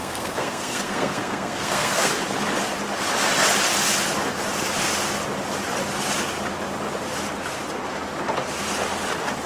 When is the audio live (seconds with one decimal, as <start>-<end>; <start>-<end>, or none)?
2.1-9.5